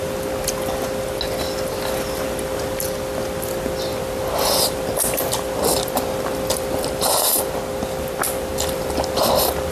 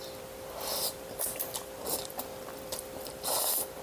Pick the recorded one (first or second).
first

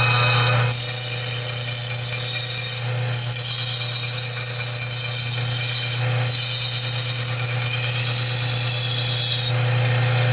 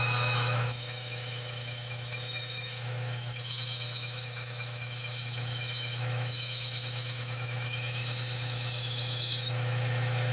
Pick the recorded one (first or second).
first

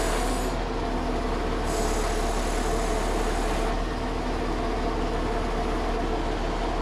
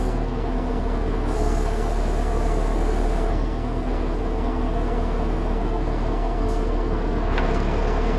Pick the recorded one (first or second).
first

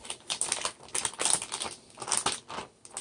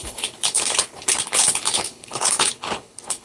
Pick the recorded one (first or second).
first